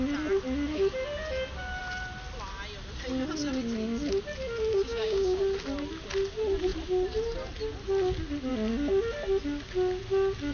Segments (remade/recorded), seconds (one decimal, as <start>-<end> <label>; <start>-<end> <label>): 0.0-4.7 recorded; 4.7-5.4 remade; 5.4-10.5 recorded